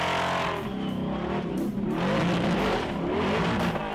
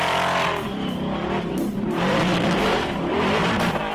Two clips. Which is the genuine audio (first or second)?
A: first